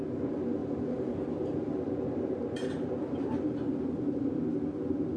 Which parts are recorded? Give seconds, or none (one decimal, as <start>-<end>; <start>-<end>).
0.0-0.6; 3.7-5.2